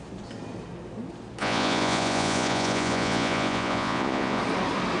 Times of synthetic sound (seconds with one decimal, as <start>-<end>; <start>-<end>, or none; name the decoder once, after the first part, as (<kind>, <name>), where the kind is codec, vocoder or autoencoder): 1.4-4.4 (vocoder, Vocos)